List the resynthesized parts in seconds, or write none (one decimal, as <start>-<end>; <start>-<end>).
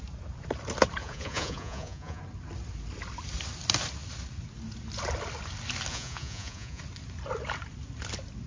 1.0-2.2; 5.9-6.8